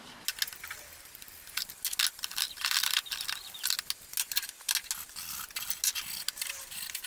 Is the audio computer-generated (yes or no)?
no